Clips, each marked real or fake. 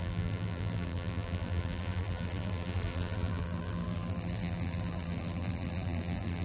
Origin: fake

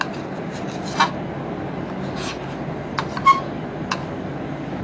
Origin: real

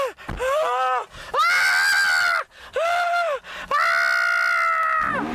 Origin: real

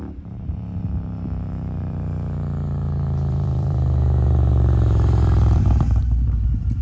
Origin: fake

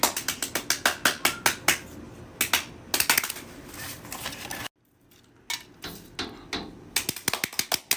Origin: real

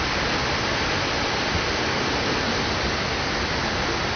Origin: real